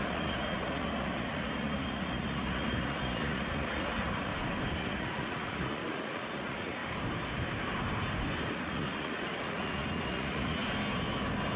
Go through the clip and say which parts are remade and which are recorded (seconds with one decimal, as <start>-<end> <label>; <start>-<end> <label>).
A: 0.0-4.3 remade; 4.3-4.8 recorded; 4.8-6.8 remade; 6.8-8.5 recorded; 8.5-10.6 remade; 10.6-11.6 recorded